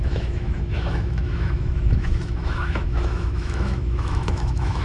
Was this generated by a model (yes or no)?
yes